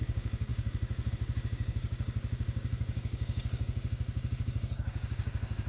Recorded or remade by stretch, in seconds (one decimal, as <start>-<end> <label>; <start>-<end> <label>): 0.0-5.7 remade

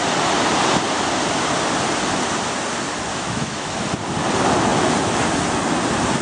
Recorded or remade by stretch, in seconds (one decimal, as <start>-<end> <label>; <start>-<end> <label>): 0.0-3.1 recorded; 3.1-3.7 remade; 3.7-6.2 recorded

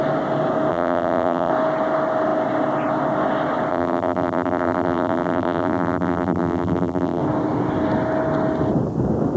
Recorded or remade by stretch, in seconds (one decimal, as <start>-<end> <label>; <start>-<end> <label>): 0.0-0.7 recorded; 0.7-1.5 remade; 1.5-3.7 recorded; 3.7-7.2 remade; 7.2-9.4 recorded

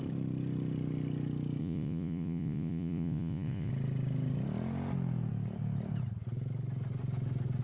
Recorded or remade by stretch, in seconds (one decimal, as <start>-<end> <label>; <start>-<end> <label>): 0.0-1.6 recorded; 1.6-3.7 remade; 3.7-7.6 recorded

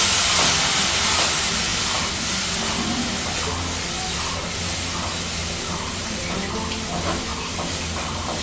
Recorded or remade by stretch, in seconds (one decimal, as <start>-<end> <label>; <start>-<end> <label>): 0.0-5.4 recorded; 5.4-6.2 remade; 6.2-7.3 recorded; 7.3-8.4 remade

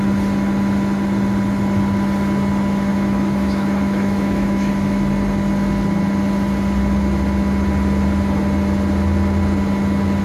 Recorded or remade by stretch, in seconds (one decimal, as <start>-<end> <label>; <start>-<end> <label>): 0.0-2.9 recorded; 2.9-4.7 remade; 4.7-10.2 recorded

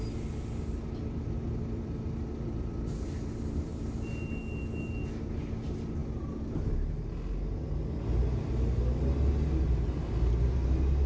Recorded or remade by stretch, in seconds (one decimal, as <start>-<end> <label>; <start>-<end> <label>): 0.0-11.1 recorded